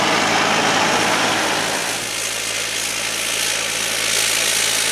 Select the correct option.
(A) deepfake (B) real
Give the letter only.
B